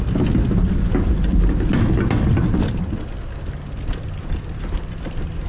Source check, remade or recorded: recorded